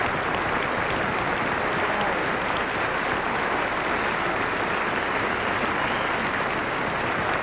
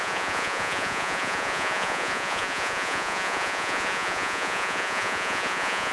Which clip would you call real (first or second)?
first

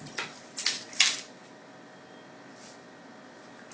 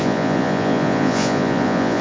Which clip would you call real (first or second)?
first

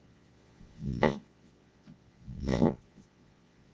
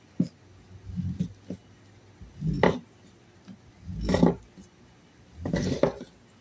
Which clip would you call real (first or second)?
second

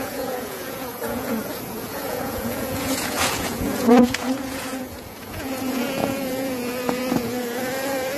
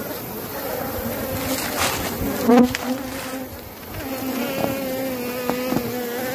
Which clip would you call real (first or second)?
second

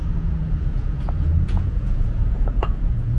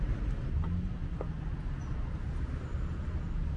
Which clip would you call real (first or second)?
second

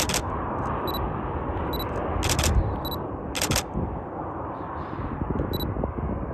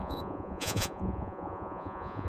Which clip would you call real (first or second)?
first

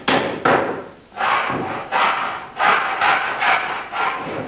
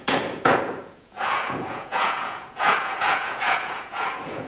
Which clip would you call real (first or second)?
first